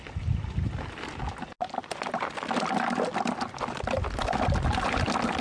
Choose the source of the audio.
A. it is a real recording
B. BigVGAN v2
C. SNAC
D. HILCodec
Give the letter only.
A